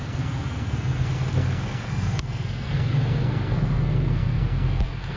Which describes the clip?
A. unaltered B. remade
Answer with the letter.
B